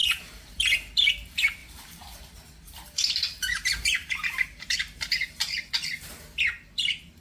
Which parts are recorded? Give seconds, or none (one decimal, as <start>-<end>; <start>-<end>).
0.5-1.6; 5.7-7.2